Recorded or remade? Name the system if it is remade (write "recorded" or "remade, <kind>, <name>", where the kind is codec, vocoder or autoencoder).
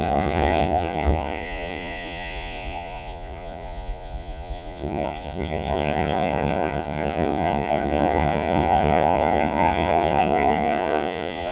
remade, vocoder, Vocos